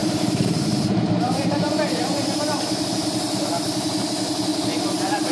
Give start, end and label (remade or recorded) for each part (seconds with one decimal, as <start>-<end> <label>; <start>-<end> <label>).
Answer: 0.0-3.2 remade; 3.2-5.3 recorded